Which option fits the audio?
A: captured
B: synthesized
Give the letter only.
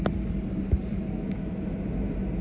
A